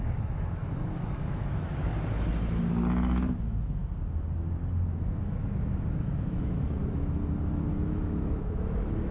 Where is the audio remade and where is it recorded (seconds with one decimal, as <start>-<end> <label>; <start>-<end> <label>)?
0.0-1.9 remade; 1.9-3.4 recorded; 3.4-3.8 remade; 3.8-5.0 recorded; 5.0-9.1 remade